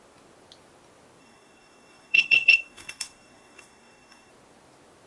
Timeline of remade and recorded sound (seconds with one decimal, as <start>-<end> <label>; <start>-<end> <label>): 0.0-1.2 recorded; 1.2-4.3 remade; 4.3-5.1 recorded